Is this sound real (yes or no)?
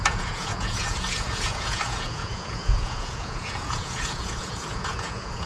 no